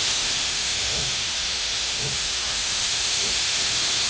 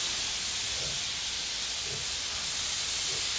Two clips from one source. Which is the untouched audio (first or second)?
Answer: second